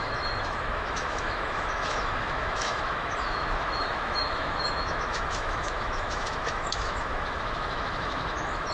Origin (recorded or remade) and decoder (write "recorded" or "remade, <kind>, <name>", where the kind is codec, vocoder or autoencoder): remade, autoencoder, DAC-VAE